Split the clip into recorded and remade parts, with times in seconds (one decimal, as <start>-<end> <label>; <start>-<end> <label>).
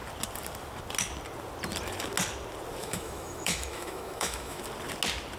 0.0-2.8 recorded; 2.8-4.6 remade; 4.6-5.4 recorded